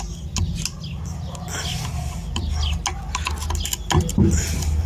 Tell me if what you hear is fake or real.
real